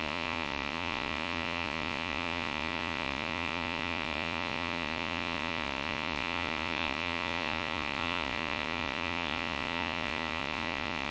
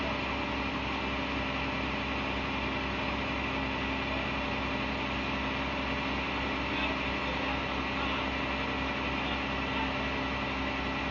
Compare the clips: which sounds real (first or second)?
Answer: second